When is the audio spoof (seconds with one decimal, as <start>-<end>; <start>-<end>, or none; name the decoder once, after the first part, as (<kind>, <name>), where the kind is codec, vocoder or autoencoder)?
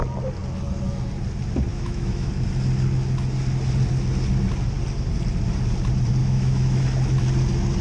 1.7-2.3 (autoencoder, DAC-VAE); 6.2-6.8